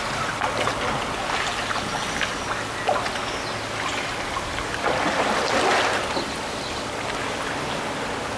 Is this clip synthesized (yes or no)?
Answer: no